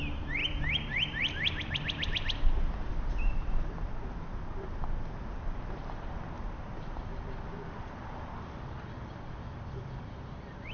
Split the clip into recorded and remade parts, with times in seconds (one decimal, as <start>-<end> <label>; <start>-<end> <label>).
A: 0.0-10.7 remade